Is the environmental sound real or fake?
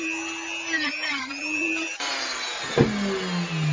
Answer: real